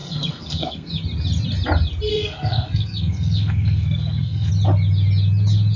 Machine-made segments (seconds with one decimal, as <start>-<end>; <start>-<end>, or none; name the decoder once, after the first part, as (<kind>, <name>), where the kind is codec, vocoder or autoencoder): 0.0-0.9 (codec, SNAC); 2.1-4.5